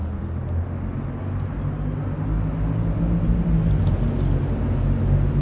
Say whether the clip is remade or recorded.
recorded